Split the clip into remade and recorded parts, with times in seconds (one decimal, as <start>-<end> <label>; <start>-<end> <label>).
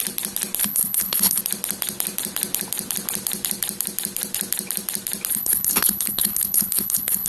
0.0-0.6 recorded; 0.6-1.4 remade; 1.4-5.3 recorded; 5.3-7.3 remade